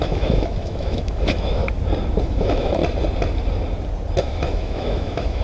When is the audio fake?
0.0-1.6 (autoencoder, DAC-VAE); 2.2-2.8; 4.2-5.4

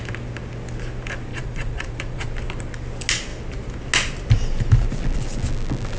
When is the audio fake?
1.3-2.3 (vocoder, Vocos)

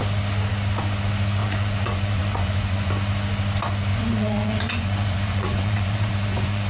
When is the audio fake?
1.4-2.9 (vocoder, Vocos); 3.9-6.7

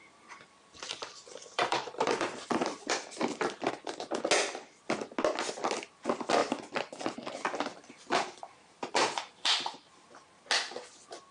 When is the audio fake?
0.0-3.7 (vocoder, BigVGAN v2); 7.7-10.1

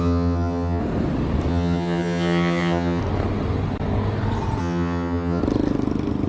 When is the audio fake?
0.0-0.8 (vocoder, HiFi-GAN); 1.5-3.0; 4.6-5.4

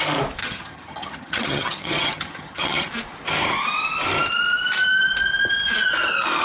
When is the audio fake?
0.4-2.9 (vocoder, HiFi-GAN)

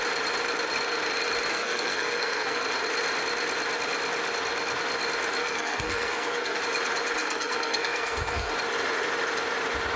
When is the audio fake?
1.5-2.6 (codec, SNAC); 5.4-6.6; 7.2-8.5

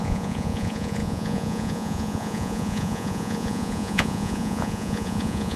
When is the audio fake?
0.0-5.6 (vocoder, Vocos)